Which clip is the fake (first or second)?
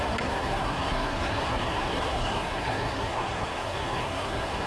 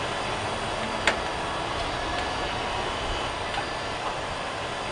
first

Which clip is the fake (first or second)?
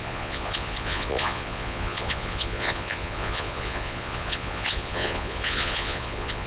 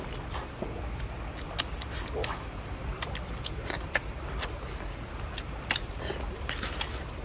first